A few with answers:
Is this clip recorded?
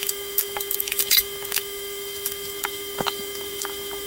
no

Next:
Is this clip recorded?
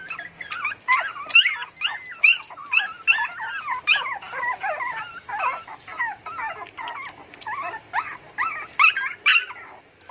yes